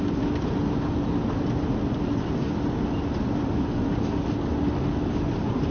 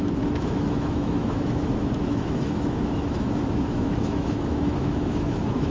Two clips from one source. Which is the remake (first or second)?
second